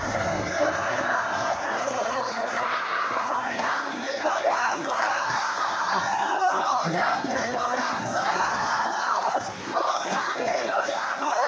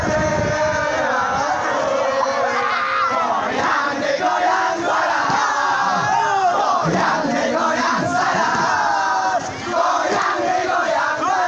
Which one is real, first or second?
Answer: second